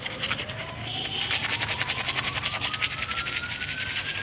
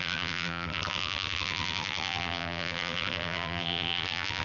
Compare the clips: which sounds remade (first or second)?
second